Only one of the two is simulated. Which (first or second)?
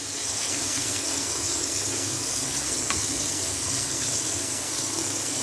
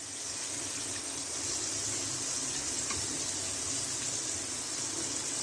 first